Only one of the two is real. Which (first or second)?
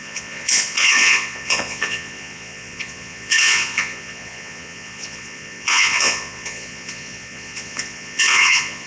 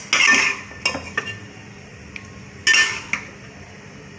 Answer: second